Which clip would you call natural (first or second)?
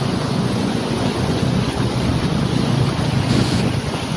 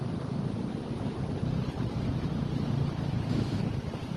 second